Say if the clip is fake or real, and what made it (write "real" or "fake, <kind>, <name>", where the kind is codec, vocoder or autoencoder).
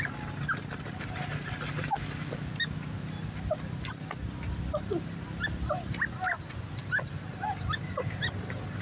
real